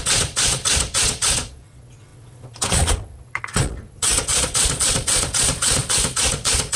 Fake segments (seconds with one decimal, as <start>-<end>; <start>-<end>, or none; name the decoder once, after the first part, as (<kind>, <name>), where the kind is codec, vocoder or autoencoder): 0.0-6.8 (vocoder, Vocos)